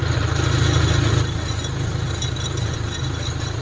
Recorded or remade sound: recorded